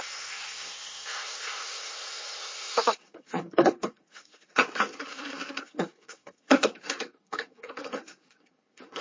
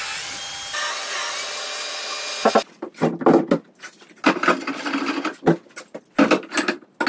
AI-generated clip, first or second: first